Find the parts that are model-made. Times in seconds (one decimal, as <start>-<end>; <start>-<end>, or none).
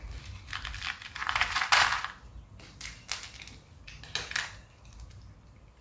none